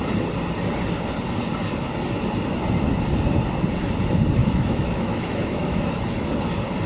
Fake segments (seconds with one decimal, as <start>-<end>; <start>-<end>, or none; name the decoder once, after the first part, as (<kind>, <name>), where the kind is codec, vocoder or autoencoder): 4.4-6.0 (autoencoder, DAC-VAE)